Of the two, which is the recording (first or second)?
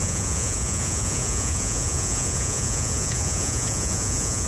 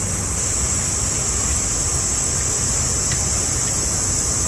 second